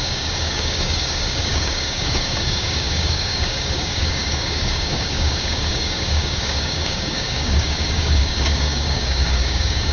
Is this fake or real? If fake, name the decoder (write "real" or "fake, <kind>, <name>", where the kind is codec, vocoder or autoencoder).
fake, codec, DAC